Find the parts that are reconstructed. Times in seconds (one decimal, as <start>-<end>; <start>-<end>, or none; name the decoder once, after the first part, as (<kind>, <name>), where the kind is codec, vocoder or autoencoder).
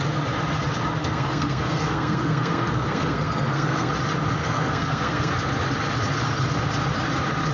1.0-3.9 (codec, SNAC); 4.4-5.3